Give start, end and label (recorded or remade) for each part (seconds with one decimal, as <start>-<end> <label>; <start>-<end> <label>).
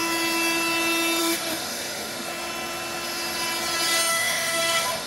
0.0-1.2 recorded; 1.2-2.3 remade; 2.3-4.1 recorded; 4.1-5.1 remade